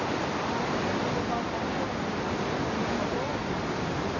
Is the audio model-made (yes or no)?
no